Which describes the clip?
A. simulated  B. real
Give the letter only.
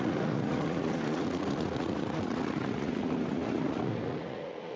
A